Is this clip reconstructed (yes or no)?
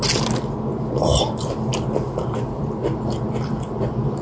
no